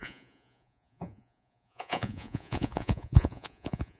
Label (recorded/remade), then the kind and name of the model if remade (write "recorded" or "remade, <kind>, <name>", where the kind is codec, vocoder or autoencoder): remade, vocoder, Vocos